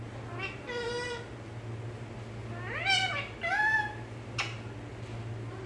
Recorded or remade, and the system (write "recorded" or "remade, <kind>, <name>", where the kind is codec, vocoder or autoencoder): recorded